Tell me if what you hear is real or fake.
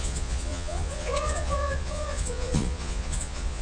fake